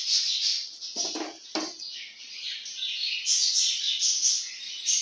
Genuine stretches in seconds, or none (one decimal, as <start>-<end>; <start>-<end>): 0.0-5.0

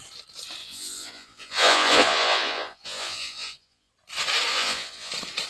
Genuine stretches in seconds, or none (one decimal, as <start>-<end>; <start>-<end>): 0.0-0.6; 3.9-4.5; 5.1-5.5

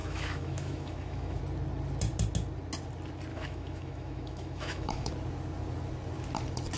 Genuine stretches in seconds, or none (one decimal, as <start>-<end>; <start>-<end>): 1.4-3.3; 5.1-6.8